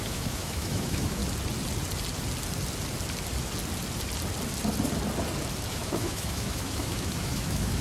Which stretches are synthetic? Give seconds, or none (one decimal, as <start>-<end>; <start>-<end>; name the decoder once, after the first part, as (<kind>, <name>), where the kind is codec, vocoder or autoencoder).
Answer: 0.0-1.2 (autoencoder, DAC-VAE); 5.7-7.8